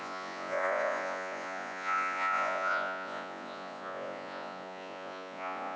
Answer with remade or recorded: remade